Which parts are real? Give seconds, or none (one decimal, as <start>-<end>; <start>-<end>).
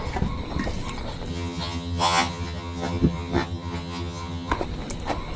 0.0-1.3; 4.5-5.4